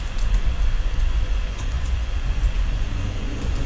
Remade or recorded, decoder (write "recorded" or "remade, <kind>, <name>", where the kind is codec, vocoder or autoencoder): remade, vocoder, Vocos